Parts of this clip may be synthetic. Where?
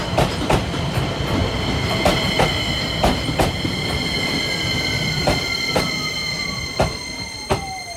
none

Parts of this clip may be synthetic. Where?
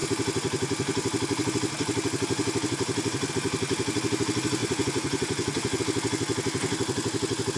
4.6-5.8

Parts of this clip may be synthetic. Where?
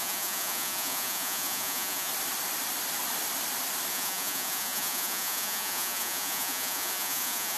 0.0-2.1; 3.9-7.6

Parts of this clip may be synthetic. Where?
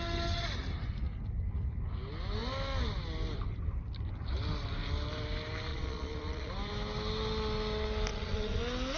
5.7-6.5; 8.1-8.6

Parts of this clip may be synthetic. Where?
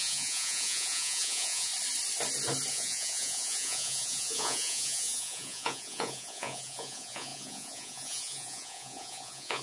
0.0-1.7; 2.7-9.6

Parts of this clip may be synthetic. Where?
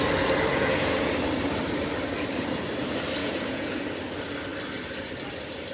0.5-1.1; 3.2-3.8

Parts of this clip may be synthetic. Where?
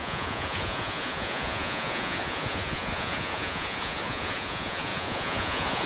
0.0-5.9